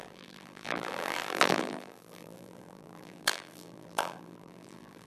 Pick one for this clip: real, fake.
fake